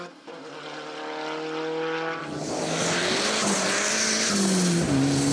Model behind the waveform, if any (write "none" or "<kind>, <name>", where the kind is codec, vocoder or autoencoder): none